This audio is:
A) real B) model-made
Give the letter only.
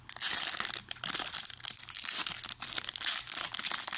A